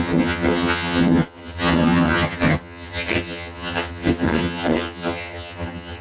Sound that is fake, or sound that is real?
fake